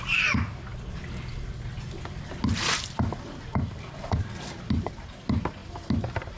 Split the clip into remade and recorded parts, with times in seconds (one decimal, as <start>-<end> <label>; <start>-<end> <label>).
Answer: 0.0-6.4 recorded